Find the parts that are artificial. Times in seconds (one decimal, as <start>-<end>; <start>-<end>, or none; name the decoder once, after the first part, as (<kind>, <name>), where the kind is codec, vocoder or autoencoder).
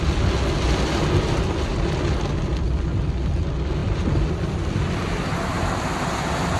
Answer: 1.7-2.5 (vocoder, BigVGAN v2)